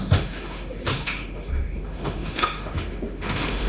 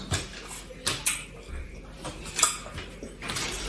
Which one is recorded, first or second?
second